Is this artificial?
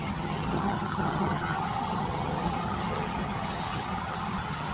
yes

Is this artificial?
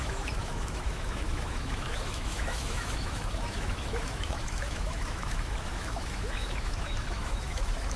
yes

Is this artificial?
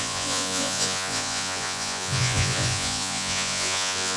yes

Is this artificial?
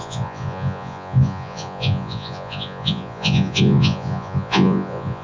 yes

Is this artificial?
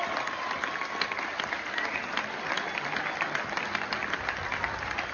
no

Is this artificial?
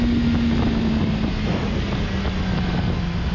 no